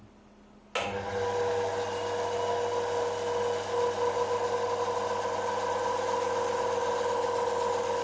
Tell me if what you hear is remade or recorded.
recorded